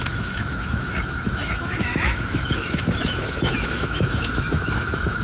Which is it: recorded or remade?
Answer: remade